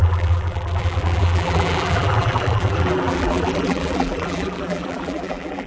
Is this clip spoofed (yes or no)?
yes